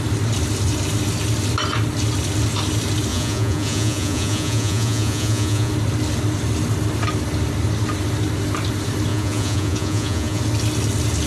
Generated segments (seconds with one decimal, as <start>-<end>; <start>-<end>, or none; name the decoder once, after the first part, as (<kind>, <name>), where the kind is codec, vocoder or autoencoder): 3.1-5.7 (vocoder, Vocos); 9.1-10.4